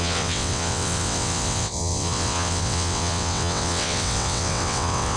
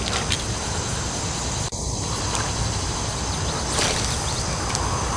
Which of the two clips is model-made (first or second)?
first